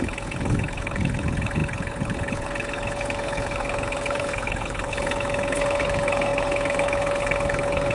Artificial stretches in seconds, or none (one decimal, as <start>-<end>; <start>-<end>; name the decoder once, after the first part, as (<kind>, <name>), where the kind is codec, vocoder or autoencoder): 0.0-7.9 (codec, HILCodec)